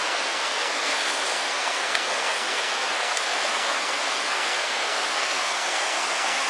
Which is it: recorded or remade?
remade